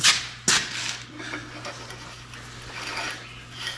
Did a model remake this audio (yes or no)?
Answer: no